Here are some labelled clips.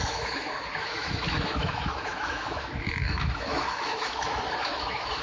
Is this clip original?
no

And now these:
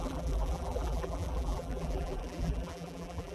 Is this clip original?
no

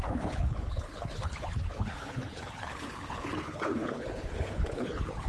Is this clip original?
no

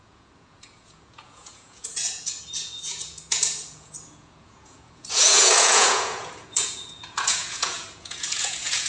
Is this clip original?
no